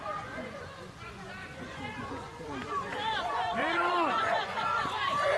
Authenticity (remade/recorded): remade